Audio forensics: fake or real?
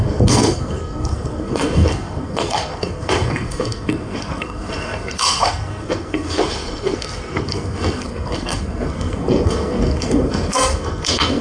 fake